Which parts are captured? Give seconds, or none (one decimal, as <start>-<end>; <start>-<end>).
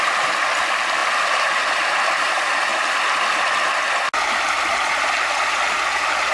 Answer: 0.0-6.3